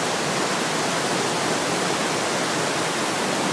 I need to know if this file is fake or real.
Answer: real